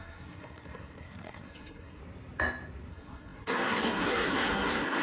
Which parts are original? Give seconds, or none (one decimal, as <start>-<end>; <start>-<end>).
2.0-2.9